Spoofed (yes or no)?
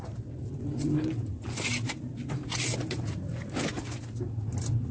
no